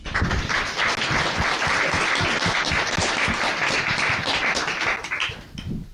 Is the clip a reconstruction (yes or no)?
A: no